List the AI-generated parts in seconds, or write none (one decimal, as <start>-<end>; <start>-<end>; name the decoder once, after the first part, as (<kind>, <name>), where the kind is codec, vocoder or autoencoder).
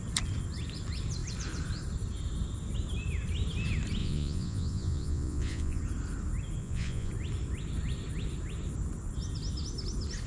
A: 4.0-5.8 (vocoder, Vocos); 6.6-7.1